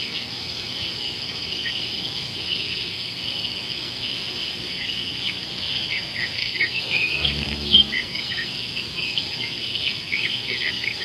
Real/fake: fake